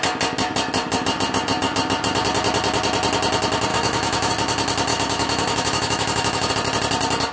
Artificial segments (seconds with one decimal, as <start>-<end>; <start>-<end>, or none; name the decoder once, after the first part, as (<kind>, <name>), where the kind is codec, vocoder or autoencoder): 3.7-4.3 (autoencoder, DAC-VAE); 4.9-6.5